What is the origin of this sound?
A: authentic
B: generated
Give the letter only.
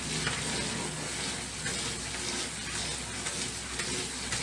A